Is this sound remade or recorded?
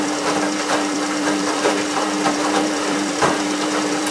remade